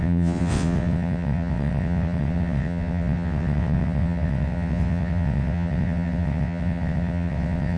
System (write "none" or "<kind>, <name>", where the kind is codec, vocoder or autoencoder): vocoder, WaveNeXt